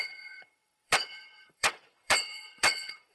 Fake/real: fake